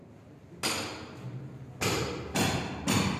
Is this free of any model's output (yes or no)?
yes